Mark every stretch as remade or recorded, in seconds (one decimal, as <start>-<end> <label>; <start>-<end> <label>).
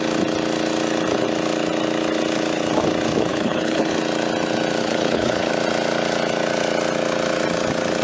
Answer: 0.0-3.3 recorded; 3.3-3.9 remade; 3.9-4.8 recorded; 4.8-5.5 remade; 5.5-8.0 recorded